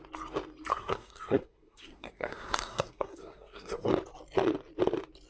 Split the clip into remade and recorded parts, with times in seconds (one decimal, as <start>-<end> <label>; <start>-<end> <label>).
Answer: 0.0-0.7 recorded; 0.7-3.9 remade; 3.9-5.3 recorded